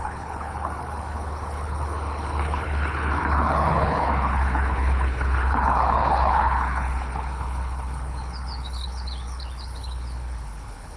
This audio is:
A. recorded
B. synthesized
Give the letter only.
B